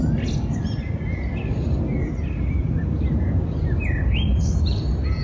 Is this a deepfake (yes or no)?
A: no